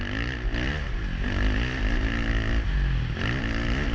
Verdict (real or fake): real